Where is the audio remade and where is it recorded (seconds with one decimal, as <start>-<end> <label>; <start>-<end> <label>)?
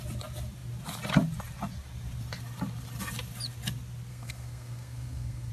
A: 0.0-4.1 recorded; 4.1-5.5 remade